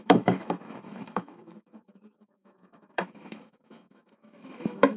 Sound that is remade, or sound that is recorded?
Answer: remade